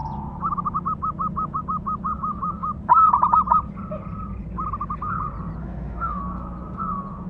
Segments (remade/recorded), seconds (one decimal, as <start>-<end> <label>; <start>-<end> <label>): 0.0-5.6 recorded; 5.6-6.2 remade; 6.2-7.3 recorded